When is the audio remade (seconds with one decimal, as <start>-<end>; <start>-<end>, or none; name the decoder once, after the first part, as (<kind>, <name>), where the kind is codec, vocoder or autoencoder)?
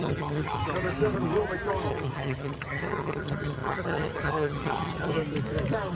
0.0-0.6 (vocoder, HiFi-GAN); 1.9-5.1